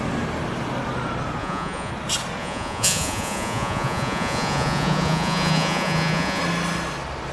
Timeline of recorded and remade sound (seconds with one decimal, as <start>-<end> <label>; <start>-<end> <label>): 0.0-1.4 recorded; 1.4-1.9 remade; 1.9-2.4 recorded; 2.4-6.4 remade; 6.4-7.3 recorded